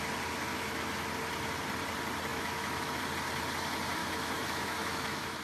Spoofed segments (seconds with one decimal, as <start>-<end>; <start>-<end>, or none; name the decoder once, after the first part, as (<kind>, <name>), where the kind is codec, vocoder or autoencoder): 0.5-1.1 (autoencoder, DAC-VAE); 2.3-3.0; 4.0-5.4